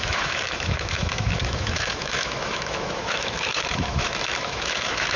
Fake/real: fake